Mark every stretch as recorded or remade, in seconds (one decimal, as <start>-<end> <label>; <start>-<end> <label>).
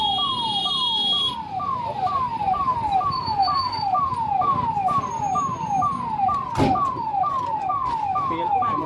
0.0-8.9 recorded